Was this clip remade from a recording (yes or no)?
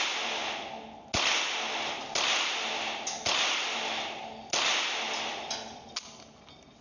no